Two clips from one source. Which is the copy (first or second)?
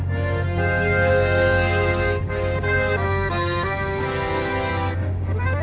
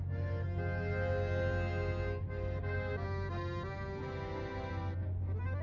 first